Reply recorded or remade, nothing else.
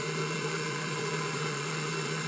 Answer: remade